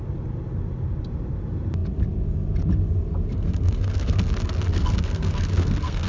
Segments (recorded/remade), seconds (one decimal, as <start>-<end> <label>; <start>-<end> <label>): 0.0-3.3 recorded; 3.3-4.2 remade; 4.2-4.7 recorded; 4.7-6.1 remade